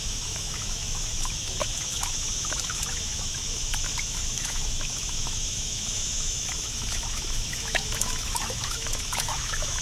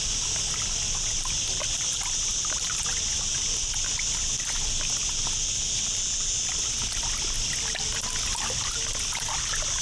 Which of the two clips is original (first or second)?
second